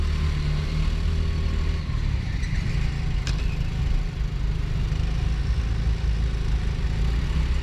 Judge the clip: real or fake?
real